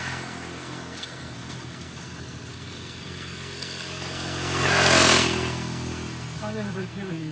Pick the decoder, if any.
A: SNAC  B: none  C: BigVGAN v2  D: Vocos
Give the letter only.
A